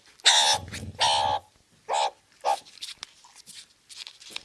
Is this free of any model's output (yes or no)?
yes